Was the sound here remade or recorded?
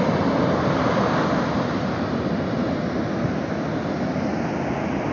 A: recorded